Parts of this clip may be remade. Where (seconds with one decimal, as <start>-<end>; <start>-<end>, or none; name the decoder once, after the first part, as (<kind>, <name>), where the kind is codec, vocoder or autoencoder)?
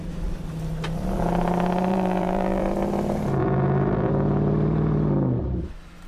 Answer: 1.9-2.6 (vocoder, BigVGAN v2); 3.4-4.1